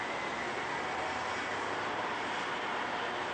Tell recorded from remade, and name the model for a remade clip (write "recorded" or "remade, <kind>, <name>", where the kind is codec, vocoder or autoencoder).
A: recorded